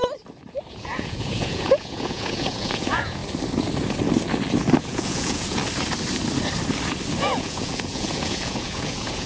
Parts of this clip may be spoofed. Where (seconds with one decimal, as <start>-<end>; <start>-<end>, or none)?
0.7-3.2; 4.8-5.6; 7.2-9.3

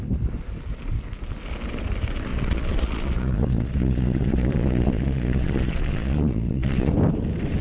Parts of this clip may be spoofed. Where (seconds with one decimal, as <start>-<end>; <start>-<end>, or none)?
2.3-6.9

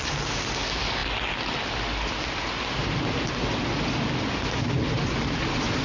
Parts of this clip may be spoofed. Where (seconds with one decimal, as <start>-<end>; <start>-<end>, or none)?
none

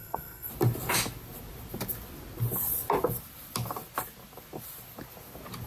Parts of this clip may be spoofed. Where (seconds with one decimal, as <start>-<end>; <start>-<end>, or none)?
0.0-0.5

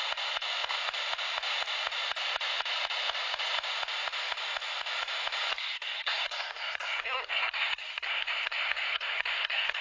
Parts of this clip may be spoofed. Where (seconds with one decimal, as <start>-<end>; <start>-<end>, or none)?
5.5-9.8

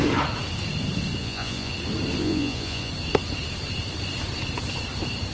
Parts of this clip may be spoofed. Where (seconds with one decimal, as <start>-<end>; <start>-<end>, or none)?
1.2-1.7; 2.2-2.9

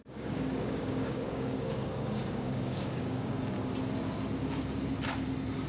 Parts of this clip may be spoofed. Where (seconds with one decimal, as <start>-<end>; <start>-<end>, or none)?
0.0-3.4

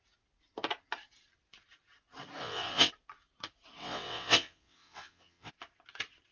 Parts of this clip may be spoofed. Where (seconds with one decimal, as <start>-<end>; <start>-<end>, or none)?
2.4-2.9; 3.8-5.5